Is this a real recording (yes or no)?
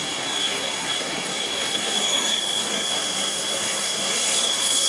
no